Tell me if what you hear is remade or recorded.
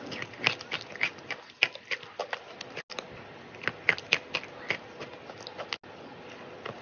recorded